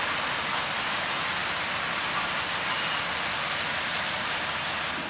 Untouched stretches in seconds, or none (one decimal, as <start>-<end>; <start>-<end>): 0.0-5.1